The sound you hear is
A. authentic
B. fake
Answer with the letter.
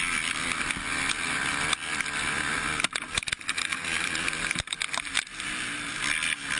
A